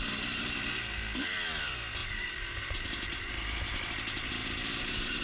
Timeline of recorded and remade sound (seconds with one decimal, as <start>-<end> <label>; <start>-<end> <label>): 0.0-2.0 recorded; 2.0-3.8 remade; 3.8-4.4 recorded; 4.4-5.2 remade